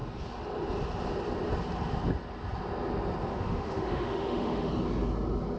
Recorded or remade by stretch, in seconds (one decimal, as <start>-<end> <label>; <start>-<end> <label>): 0.0-3.3 recorded; 3.3-4.7 remade; 4.7-5.6 recorded